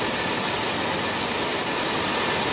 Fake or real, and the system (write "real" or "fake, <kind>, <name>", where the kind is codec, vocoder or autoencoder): real